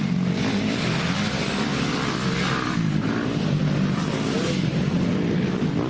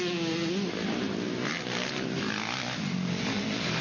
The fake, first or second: first